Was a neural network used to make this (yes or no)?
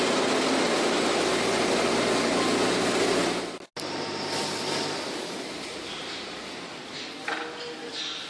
no